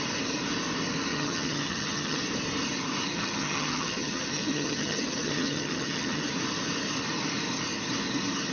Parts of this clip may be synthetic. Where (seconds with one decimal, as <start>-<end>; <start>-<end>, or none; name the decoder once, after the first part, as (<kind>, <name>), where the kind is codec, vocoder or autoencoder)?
1.1-2.2 (vocoder, HiFi-GAN); 3.1-6.2

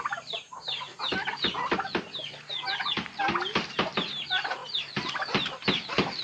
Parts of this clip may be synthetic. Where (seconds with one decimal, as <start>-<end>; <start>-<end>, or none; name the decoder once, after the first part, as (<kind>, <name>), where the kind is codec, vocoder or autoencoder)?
0.0-0.9 (vocoder, BigVGAN v2); 3.7-6.2

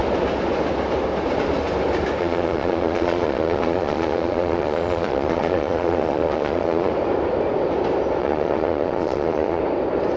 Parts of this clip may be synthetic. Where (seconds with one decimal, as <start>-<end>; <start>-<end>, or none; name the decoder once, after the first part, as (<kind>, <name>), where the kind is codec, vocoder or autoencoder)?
2.2-6.9 (vocoder, Vocos); 8.2-9.6

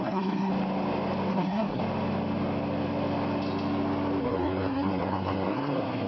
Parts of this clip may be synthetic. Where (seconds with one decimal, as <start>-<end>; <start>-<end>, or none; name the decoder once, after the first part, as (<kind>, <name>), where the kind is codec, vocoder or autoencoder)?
0.0-0.5 (codec, SNAC); 1.3-1.8; 4.2-6.1